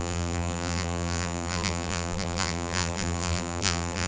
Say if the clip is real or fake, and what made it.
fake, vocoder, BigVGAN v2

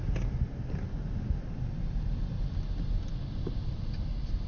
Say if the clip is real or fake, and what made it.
real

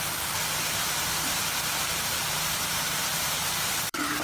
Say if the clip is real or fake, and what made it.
fake, vocoder, BigVGAN v2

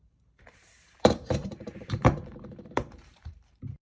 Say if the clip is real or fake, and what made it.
fake, vocoder, BigVGAN v2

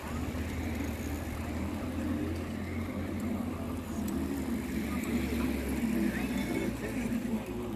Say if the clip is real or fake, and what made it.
real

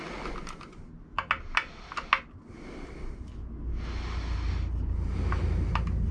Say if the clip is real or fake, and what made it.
real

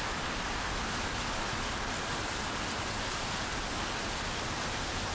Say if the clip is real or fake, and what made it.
real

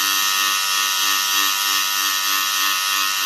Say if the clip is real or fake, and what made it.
fake, vocoder, BigVGAN v2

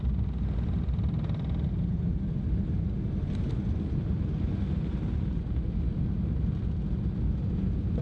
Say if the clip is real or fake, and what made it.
real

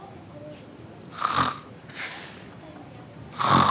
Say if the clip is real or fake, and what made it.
real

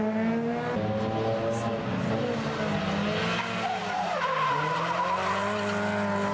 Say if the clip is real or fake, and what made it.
real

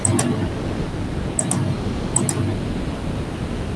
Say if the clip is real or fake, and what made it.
real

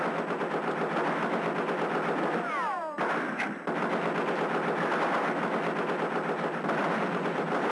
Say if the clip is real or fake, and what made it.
real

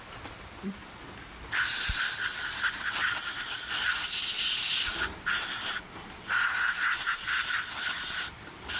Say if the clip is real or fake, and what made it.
real